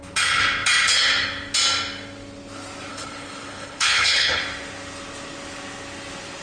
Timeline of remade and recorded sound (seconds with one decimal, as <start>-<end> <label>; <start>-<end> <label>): 0.0-2.9 recorded; 2.9-4.4 remade; 4.4-6.4 recorded